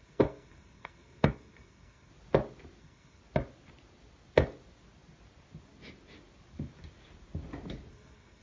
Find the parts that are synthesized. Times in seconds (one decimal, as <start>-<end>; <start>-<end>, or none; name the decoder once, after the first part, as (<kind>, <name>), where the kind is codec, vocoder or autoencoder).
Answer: 0.0-2.1 (codec, SNAC); 2.8-3.2; 7.9-8.4